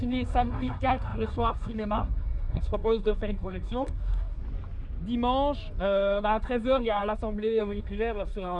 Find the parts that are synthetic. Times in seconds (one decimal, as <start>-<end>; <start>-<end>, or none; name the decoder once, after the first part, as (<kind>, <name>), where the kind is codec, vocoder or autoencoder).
0.0-4.4 (codec, SNAC); 5.8-8.6